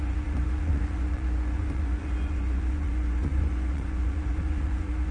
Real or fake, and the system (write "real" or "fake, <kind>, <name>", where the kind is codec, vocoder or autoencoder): fake, vocoder, Vocos